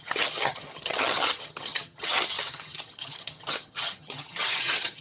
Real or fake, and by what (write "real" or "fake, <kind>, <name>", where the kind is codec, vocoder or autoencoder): fake, vocoder, HiFi-GAN